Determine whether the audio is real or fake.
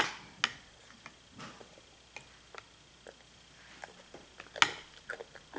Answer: real